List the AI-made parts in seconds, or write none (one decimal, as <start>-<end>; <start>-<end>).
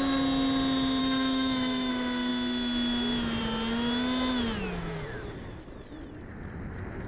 1.0-1.9